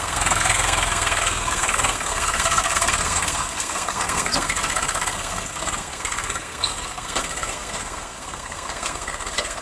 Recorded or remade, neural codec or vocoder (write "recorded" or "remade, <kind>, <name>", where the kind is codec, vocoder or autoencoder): remade, codec, SNAC